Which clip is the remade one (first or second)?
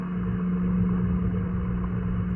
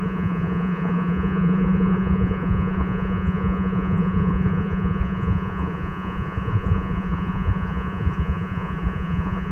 second